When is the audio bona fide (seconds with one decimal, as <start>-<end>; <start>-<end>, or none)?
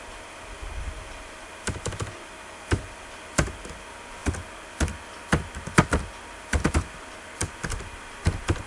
0.0-8.7